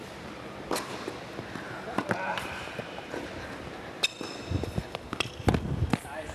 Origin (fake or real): real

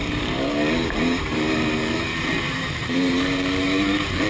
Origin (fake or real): fake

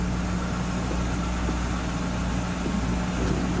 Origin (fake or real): real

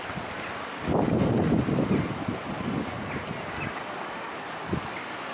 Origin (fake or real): real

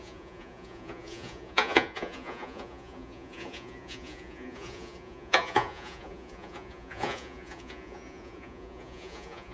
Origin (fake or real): fake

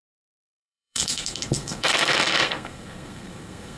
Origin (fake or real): fake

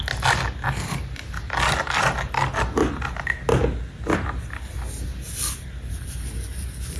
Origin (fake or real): real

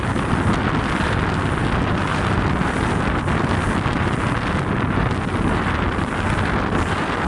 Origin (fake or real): real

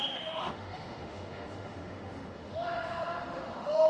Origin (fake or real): fake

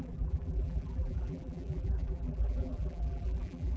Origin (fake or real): fake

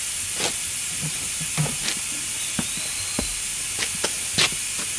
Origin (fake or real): real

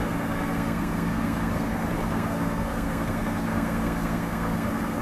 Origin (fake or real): fake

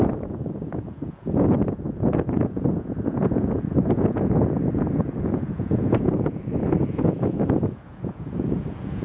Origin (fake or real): fake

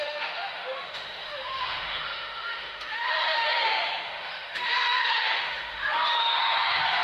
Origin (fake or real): fake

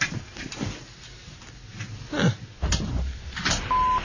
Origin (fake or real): real